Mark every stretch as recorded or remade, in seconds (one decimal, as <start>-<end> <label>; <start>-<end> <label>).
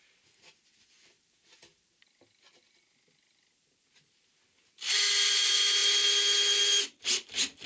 0.0-7.7 recorded